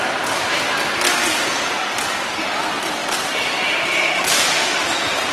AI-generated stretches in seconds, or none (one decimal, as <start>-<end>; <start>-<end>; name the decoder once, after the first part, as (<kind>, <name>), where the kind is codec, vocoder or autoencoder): 1.2-1.8 (vocoder, BigVGAN v2); 3.0-4.3